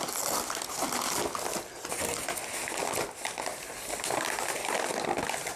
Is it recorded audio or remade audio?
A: recorded